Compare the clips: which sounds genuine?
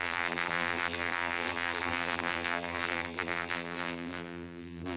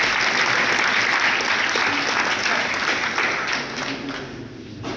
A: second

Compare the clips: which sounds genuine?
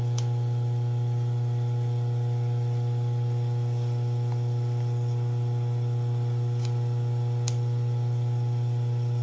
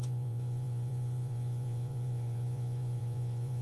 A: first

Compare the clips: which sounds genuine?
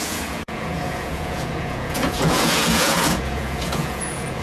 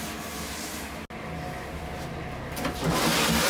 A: second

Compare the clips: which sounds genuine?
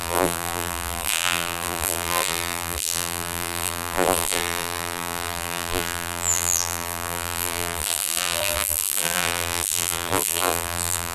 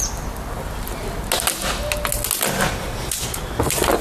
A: second